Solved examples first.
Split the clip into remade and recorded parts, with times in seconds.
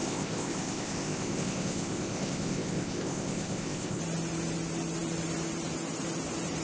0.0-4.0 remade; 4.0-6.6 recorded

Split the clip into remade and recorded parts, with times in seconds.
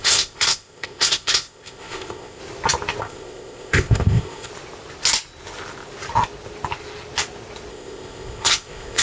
0.0-2.4 remade; 2.4-3.0 recorded; 3.0-4.5 remade; 4.5-7.7 recorded; 7.7-9.0 remade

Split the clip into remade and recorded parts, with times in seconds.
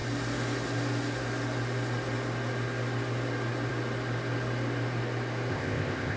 0.0-5.5 recorded; 5.5-6.2 remade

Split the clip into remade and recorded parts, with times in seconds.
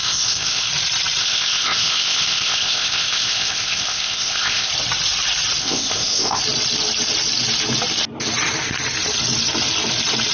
0.0-0.7 remade; 0.7-1.2 recorded; 1.2-4.7 remade; 4.7-5.6 recorded; 5.6-6.4 remade; 6.4-10.3 recorded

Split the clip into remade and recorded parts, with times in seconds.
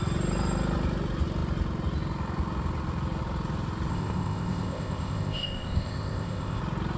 0.0-3.9 recorded; 3.9-6.6 remade; 6.6-7.0 recorded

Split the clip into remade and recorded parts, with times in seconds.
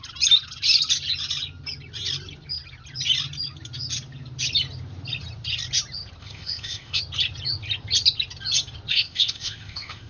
0.0-6.2 recorded; 6.2-7.0 remade; 7.0-8.9 recorded; 8.9-10.1 remade